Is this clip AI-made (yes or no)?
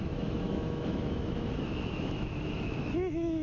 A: yes